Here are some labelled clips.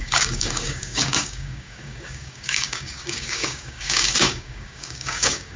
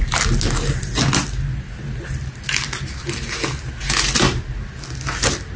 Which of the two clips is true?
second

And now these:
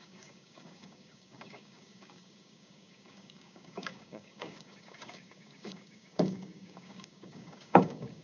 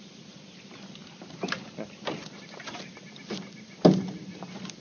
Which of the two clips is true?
second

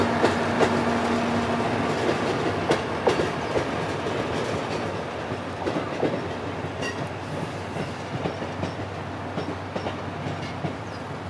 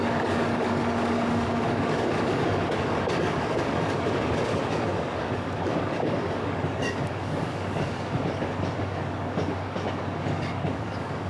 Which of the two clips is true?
first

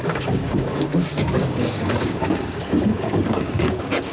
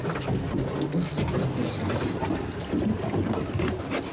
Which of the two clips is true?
second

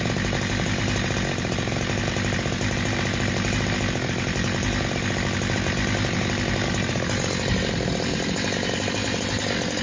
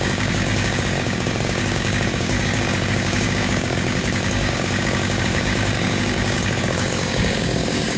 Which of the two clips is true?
first